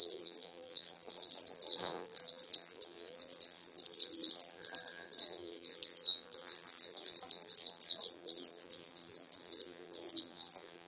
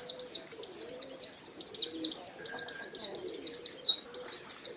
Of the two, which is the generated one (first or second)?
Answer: first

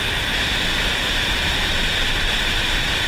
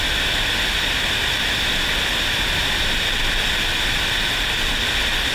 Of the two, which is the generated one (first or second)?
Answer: first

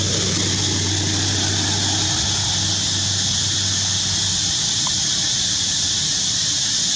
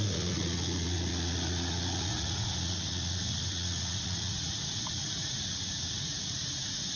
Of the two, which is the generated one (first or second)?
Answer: second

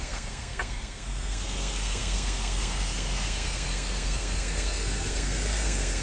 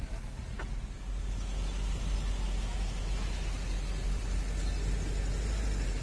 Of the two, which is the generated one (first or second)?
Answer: first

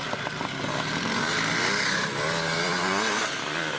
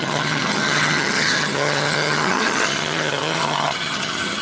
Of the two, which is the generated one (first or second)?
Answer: second